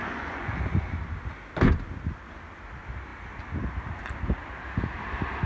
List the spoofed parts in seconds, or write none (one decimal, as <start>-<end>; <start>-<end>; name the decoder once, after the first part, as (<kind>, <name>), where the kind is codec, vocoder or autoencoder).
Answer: 0.0-0.6 (vocoder, Vocos)